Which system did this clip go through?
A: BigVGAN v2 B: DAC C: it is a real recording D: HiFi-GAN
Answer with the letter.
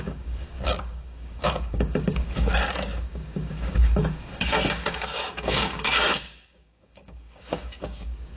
B